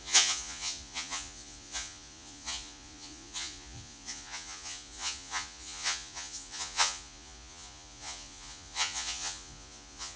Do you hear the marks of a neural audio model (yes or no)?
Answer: yes